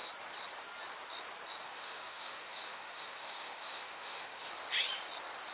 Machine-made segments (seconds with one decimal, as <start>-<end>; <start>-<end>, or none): 1.6-4.5

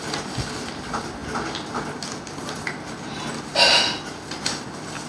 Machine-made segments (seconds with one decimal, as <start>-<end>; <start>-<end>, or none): none

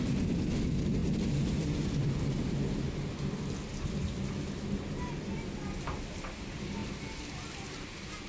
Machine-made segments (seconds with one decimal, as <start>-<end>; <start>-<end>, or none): none

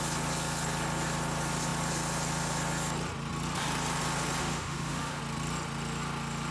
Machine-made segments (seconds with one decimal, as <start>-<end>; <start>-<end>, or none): 4.4-5.2

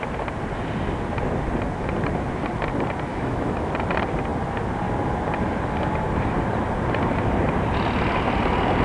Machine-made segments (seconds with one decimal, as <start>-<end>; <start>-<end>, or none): 3.1-3.7